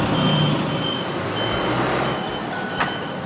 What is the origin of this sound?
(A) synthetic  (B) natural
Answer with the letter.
B